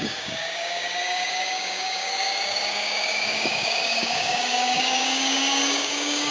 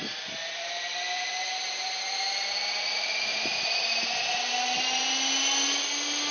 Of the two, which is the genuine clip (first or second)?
second